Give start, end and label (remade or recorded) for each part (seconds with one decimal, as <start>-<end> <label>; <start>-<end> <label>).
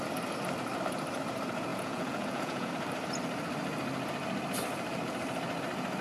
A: 0.0-1.7 recorded; 1.7-2.7 remade; 2.7-6.0 recorded